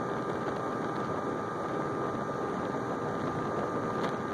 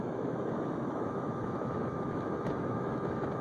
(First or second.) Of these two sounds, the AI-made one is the second